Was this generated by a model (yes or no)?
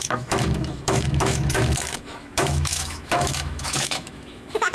yes